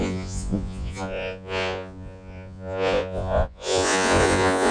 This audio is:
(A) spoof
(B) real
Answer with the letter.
A